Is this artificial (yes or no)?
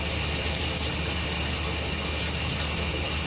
no